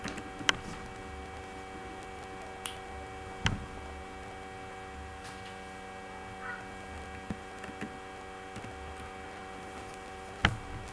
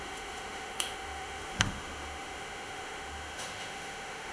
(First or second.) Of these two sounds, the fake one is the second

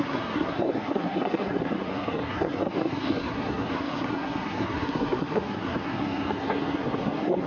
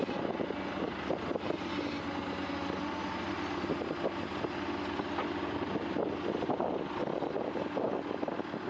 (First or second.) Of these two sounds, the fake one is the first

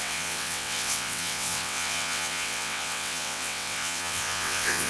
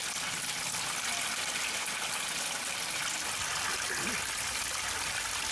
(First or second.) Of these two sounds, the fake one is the first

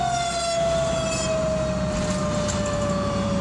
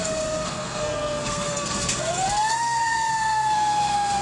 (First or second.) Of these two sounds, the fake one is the second